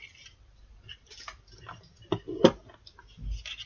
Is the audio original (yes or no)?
yes